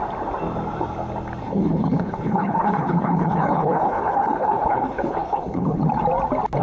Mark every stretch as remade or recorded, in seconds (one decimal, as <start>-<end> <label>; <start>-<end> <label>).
0.0-1.4 recorded; 1.4-5.8 remade; 5.8-6.6 recorded